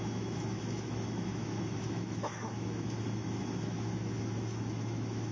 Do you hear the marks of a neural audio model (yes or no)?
yes